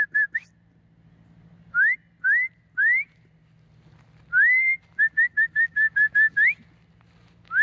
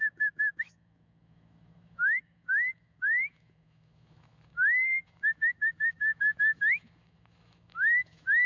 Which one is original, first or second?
first